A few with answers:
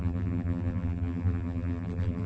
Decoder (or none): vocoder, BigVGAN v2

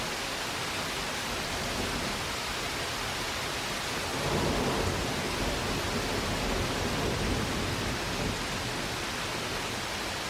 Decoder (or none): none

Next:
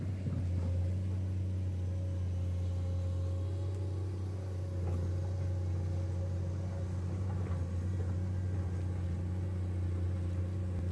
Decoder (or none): none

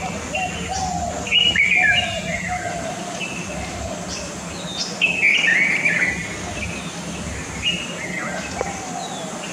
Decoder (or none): none